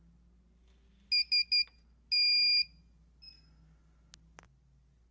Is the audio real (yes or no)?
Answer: yes